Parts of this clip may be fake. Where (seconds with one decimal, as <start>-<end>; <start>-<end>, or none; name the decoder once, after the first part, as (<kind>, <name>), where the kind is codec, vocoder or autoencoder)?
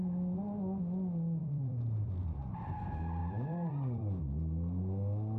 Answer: 1.4-2.7 (vocoder, BigVGAN v2); 3.2-4.2